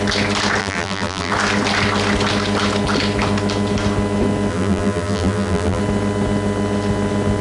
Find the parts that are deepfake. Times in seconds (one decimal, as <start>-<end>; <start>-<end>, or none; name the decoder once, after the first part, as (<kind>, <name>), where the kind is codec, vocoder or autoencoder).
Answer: 0.6-1.3 (vocoder, BigVGAN v2); 4.5-5.8